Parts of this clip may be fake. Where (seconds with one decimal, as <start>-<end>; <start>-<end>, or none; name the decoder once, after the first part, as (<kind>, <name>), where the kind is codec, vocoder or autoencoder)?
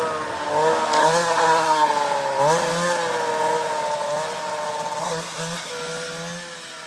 1.0-1.9 (codec, SNAC); 5.0-5.7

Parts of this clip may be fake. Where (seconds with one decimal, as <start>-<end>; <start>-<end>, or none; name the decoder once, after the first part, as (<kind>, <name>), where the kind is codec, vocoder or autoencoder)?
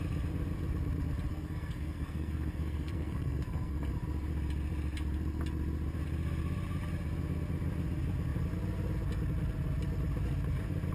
1.3-3.9 (codec, SNAC)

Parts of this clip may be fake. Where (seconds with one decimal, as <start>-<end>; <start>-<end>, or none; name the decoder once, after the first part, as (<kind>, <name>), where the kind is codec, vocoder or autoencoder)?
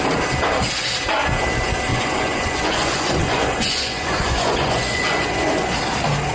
1.9-5.7 (vocoder, Vocos)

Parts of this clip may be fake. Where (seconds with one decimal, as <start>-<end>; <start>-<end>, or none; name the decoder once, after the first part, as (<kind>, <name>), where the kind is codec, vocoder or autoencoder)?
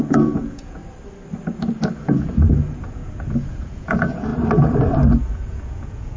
0.0-0.8 (vocoder, Vocos); 2.0-4.3; 5.2-6.2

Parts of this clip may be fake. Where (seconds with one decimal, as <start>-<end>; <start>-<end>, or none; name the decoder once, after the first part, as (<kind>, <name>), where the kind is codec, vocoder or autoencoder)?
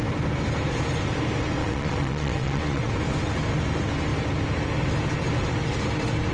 1.6-2.9 (vocoder, WaveNeXt)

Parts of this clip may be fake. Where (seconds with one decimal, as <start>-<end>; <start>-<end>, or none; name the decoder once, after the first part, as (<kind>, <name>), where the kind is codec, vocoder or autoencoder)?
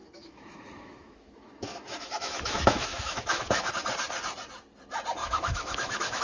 0.0-3.7 (autoencoder, DAC-VAE); 5.2-6.2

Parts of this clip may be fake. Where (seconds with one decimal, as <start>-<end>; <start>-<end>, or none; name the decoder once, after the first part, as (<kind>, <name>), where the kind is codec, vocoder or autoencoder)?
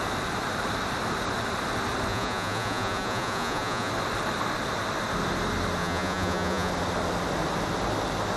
2.1-3.9 (vocoder, Vocos); 5.8-6.7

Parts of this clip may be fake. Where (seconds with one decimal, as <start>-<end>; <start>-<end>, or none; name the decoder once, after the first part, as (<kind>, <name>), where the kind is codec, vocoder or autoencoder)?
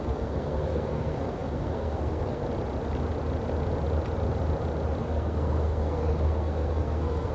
0.0-2.4 (codec, SNAC); 5.0-7.3